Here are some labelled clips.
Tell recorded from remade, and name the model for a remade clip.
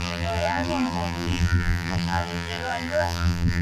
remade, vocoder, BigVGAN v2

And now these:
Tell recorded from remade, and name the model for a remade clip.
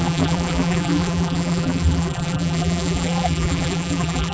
remade, vocoder, BigVGAN v2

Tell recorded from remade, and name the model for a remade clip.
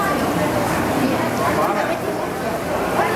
recorded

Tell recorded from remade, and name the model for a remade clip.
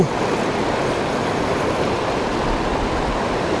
recorded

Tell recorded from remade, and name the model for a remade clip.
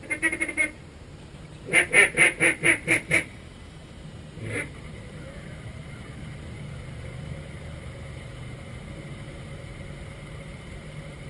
remade, vocoder, BigVGAN v2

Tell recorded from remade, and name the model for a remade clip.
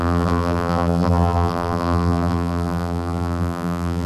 remade, vocoder, BigVGAN v2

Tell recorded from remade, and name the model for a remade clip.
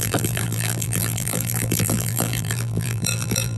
remade, vocoder, BigVGAN v2